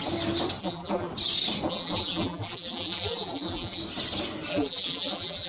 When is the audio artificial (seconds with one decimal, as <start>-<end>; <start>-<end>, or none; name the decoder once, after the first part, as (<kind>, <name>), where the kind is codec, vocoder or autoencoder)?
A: 0.6-1.1 (vocoder, BigVGAN v2); 1.7-3.8; 4.5-5.5